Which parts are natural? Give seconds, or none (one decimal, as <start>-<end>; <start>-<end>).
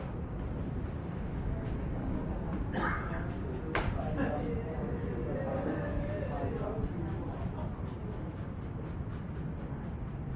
0.0-1.0; 2.3-5.5; 6.2-10.4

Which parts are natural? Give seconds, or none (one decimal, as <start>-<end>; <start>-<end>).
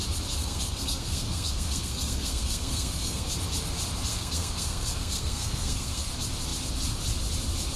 0.0-0.4; 3.3-4.1; 6.1-7.8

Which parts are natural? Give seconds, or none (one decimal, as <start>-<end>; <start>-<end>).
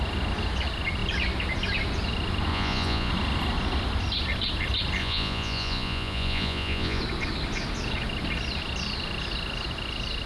0.0-2.5; 3.1-5.0; 7.0-10.3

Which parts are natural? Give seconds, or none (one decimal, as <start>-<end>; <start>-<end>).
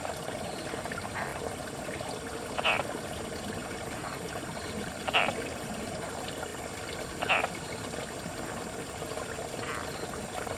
0.0-3.6; 6.1-10.6